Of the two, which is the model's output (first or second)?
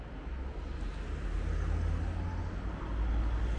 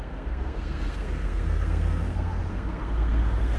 second